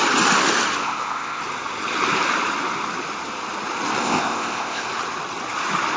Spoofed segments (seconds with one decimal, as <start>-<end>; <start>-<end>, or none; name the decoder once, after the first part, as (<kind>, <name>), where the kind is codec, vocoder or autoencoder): 0.8-1.4 (codec, ZipCodec); 4.0-4.9